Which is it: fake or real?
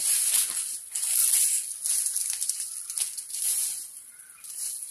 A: real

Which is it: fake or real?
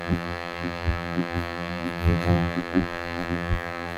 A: fake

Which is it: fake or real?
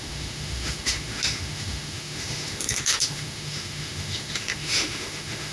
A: fake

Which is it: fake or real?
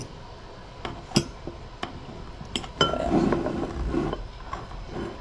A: real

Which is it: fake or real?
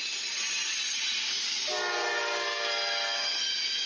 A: real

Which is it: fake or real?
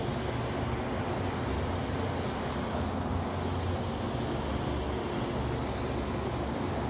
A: real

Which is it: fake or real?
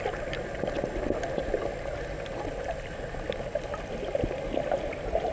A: real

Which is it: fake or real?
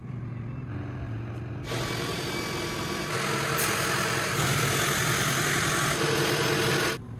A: real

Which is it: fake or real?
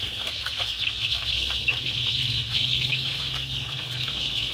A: fake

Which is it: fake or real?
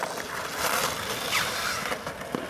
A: real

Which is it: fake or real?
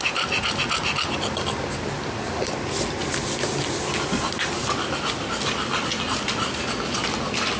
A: real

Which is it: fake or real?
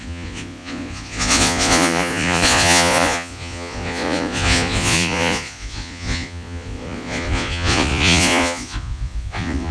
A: fake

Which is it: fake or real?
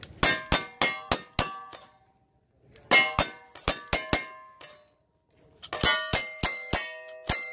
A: real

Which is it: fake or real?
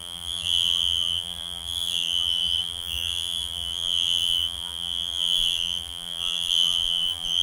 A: fake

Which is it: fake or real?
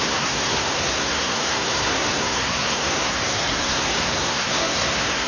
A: fake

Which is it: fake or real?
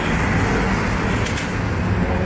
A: real